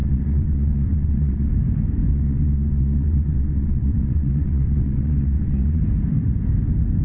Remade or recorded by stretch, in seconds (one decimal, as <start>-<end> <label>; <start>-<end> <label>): 0.0-1.5 remade; 1.5-2.1 recorded; 2.1-5.8 remade; 5.8-7.0 recorded